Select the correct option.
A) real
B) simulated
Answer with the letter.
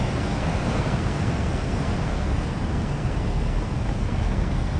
B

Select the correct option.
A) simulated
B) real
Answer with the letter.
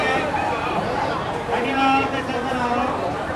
A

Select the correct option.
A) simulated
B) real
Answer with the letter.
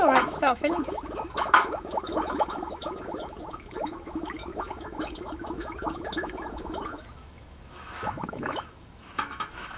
A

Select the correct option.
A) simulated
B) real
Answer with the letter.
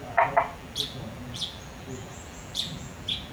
A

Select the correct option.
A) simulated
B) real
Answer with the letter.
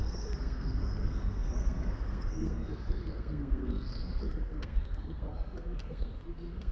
A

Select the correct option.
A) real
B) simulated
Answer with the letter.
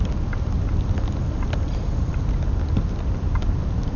A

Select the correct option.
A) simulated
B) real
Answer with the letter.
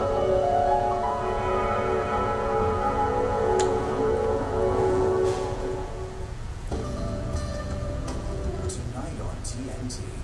A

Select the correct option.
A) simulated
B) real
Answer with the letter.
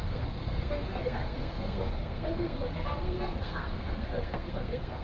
A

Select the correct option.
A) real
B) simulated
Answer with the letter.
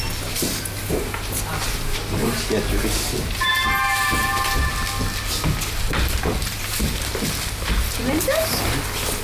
A